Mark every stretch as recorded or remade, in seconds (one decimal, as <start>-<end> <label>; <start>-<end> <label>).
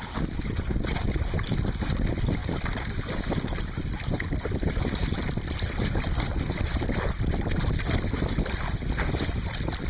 0.0-9.9 recorded